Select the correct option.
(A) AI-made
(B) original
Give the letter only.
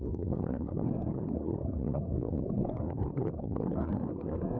A